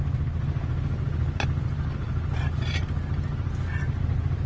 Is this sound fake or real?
real